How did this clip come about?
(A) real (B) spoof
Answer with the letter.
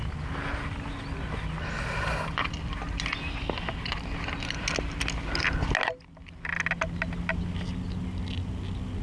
A